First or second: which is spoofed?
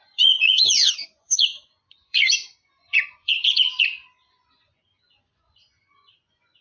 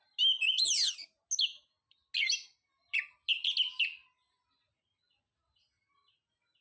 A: first